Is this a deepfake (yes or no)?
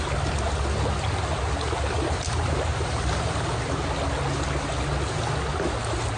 no